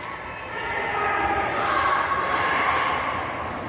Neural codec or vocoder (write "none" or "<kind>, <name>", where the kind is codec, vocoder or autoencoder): none